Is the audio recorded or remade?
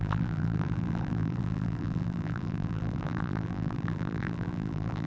remade